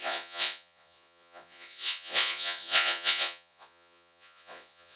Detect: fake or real fake